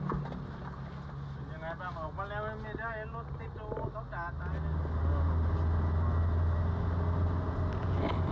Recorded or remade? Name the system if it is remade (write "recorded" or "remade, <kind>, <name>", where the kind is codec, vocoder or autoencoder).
recorded